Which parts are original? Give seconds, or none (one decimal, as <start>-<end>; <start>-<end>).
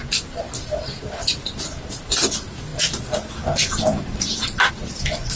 0.0-5.4